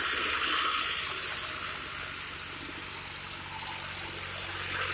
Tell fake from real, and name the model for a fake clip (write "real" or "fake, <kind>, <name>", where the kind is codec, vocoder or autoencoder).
real